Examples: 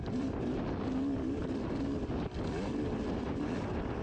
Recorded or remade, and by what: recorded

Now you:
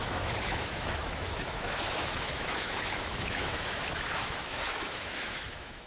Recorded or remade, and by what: remade, autoencoder, DAC-VAE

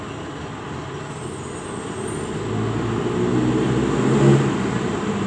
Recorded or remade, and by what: recorded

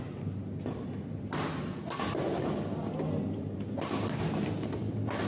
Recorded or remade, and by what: recorded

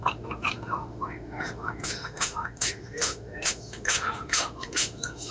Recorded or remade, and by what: remade, autoencoder, DAC-VAE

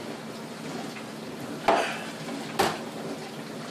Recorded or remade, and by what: recorded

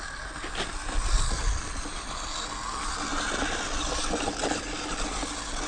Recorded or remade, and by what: recorded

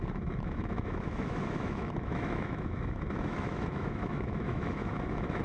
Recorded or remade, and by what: remade, autoencoder, DAC-VAE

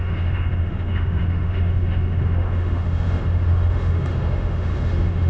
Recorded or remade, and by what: remade, autoencoder, DAC-VAE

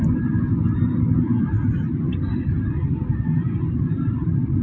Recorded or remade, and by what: recorded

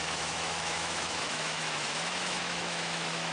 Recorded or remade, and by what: remade, autoencoder, DAC-VAE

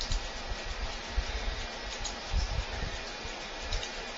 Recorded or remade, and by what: recorded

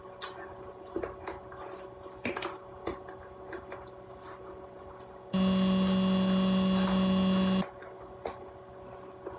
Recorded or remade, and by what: recorded